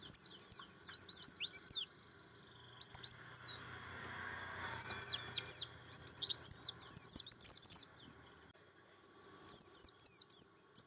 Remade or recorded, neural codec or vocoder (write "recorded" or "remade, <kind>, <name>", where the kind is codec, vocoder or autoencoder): recorded